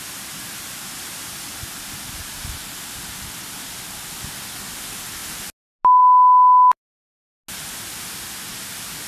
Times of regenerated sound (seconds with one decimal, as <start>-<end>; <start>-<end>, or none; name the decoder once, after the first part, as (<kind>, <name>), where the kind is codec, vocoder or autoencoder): none